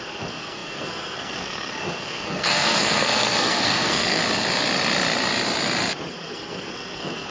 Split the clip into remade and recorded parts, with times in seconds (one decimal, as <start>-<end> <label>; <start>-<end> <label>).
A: 0.0-4.2 remade; 4.2-6.1 recorded; 6.1-7.3 remade